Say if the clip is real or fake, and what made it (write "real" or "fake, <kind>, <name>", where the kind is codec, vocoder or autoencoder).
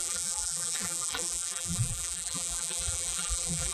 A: fake, vocoder, BigVGAN v2